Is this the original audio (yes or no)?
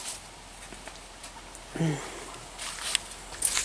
yes